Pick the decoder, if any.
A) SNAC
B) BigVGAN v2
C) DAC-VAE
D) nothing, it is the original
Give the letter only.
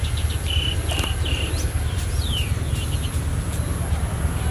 D